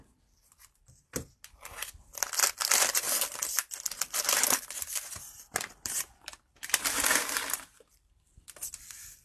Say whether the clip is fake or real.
fake